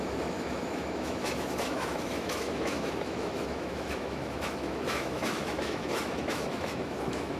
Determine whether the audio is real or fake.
fake